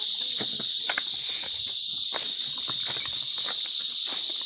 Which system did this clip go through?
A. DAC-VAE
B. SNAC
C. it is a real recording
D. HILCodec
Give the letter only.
C